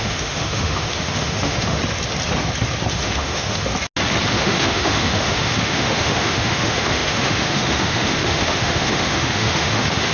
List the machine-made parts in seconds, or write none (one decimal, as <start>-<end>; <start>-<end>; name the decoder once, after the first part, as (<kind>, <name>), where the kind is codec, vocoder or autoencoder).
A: 0.0-1.8 (autoencoder, DAC-VAE); 2.9-3.7; 4.3-10.1